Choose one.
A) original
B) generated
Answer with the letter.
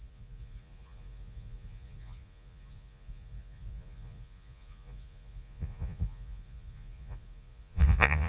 B